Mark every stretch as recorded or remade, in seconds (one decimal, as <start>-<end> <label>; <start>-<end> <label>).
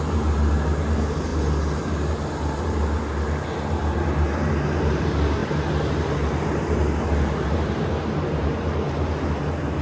0.0-5.4 recorded; 5.4-9.3 remade; 9.3-9.8 recorded